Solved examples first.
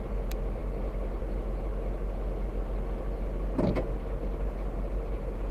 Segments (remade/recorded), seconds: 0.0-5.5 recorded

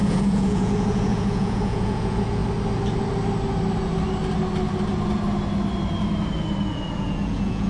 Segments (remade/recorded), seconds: 0.0-2.4 remade; 2.4-6.7 recorded; 6.7-7.7 remade

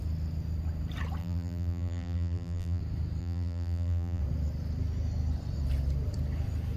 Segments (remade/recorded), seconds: 0.0-1.2 recorded; 1.2-2.8 remade; 2.8-3.2 recorded; 3.2-4.2 remade; 4.2-6.8 recorded

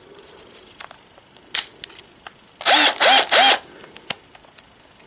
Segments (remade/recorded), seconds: 0.0-5.1 recorded

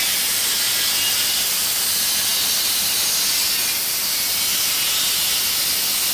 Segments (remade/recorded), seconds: 0.0-6.1 recorded

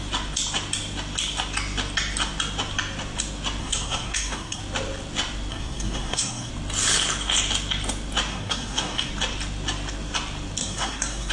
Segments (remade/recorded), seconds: 0.0-3.6 recorded; 3.6-4.6 remade; 4.6-5.5 recorded; 5.5-6.5 remade; 6.5-8.3 recorded; 8.3-9.1 remade; 9.1-10.6 recorded; 10.6-11.3 remade